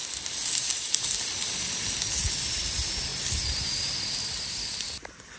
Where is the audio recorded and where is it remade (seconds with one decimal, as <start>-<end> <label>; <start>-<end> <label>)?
0.0-5.4 recorded

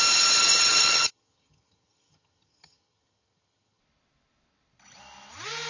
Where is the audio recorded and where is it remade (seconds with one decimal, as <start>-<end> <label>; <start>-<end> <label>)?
0.0-0.4 recorded; 0.4-3.8 remade; 3.8-5.7 recorded

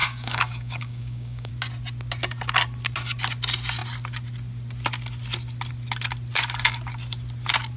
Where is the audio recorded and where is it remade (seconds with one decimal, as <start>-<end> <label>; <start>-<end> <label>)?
0.0-1.5 remade; 1.5-7.8 recorded

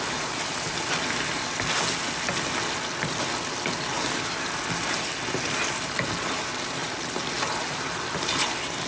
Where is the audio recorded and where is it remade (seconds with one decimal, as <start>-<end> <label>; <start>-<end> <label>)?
0.0-8.9 recorded

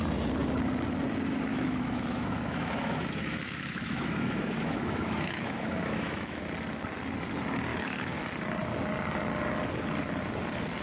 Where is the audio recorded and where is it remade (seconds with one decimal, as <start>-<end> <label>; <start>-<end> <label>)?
0.0-1.5 recorded; 1.5-6.4 remade; 6.4-7.7 recorded; 7.7-8.2 remade; 8.2-10.8 recorded